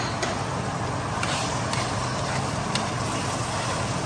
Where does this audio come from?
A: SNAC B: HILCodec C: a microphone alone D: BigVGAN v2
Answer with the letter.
C